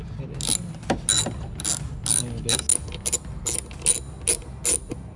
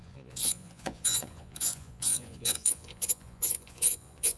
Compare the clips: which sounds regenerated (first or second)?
second